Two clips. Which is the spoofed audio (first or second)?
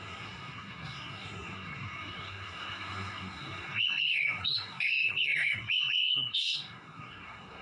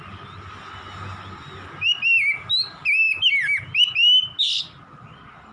first